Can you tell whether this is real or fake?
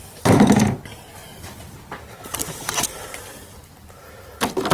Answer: real